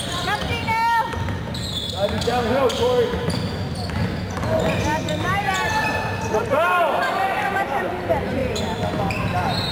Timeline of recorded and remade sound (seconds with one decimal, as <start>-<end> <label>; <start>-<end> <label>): 0.0-9.7 recorded